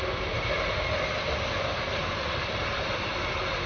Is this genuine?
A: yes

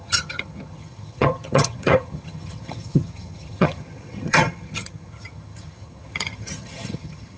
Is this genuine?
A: no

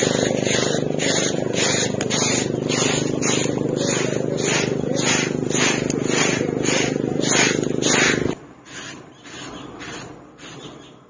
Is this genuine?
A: yes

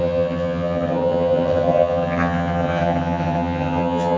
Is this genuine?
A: no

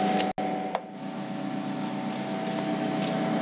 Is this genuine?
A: yes